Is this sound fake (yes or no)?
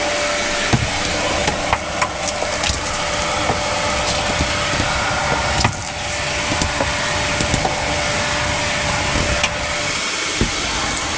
no